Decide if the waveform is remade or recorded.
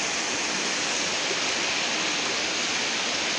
recorded